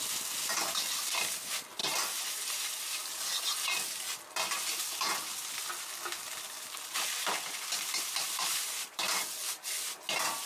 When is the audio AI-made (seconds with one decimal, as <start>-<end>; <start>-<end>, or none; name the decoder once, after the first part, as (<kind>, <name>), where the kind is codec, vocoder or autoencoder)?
none